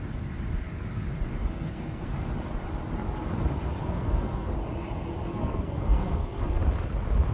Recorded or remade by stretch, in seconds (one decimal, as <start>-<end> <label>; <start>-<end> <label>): 0.0-1.4 recorded; 1.4-2.1 remade; 2.1-3.8 recorded; 3.8-4.5 remade; 4.5-5.3 recorded; 5.3-6.6 remade; 6.6-7.3 recorded